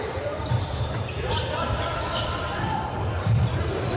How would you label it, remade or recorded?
remade